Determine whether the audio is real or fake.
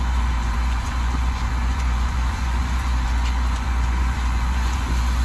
fake